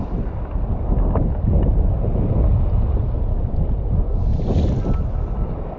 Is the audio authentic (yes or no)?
yes